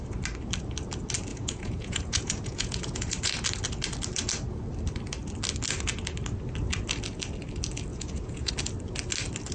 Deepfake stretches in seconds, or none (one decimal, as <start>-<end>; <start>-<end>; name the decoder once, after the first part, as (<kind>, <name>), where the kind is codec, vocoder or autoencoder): 1.3-3.3 (vocoder, Vocos); 7.9-8.5